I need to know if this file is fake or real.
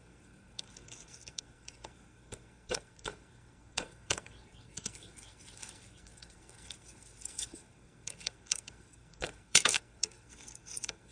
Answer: fake